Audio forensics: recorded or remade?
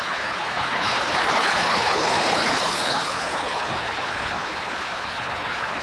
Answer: remade